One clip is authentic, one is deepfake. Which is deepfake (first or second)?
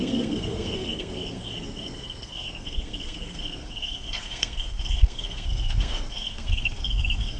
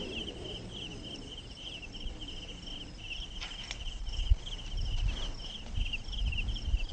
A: first